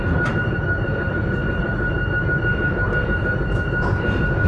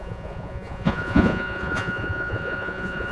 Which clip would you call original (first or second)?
first